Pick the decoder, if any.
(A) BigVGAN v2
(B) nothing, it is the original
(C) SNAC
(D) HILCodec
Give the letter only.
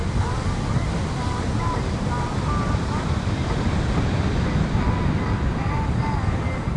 B